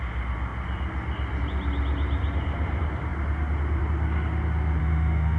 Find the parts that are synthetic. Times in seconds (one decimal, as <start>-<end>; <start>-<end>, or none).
4.8-5.4